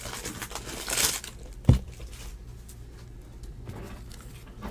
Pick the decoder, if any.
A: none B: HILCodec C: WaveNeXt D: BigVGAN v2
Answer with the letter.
A